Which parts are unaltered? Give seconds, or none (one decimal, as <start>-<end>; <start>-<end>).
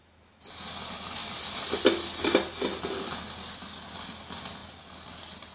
0.0-5.5